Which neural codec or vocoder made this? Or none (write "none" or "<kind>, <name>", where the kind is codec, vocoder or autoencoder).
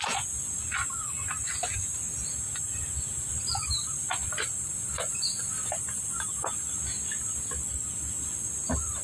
none